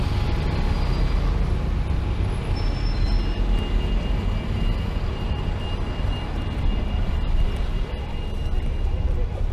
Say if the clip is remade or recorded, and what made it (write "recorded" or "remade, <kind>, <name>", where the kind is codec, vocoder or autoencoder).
recorded